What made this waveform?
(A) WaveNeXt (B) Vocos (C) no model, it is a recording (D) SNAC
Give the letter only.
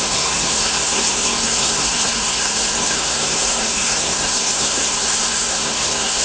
D